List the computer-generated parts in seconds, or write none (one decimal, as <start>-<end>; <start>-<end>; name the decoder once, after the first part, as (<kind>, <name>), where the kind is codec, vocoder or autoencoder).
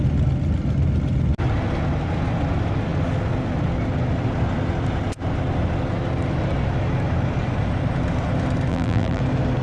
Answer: 8.7-9.2 (vocoder, BigVGAN v2)